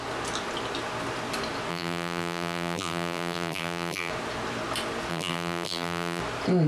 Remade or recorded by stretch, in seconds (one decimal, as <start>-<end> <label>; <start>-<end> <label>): 0.0-1.7 recorded; 1.7-4.1 remade; 4.1-5.1 recorded; 5.1-6.2 remade; 6.2-6.7 recorded